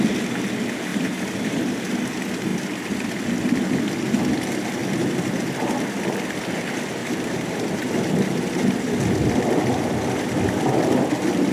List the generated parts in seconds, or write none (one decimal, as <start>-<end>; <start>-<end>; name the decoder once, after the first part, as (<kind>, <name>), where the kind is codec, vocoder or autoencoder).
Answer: 0.9-1.5 (vocoder, BigVGAN v2); 4.8-5.7; 7.0-7.9